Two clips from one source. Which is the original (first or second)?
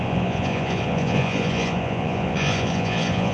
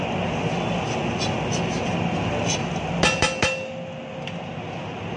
second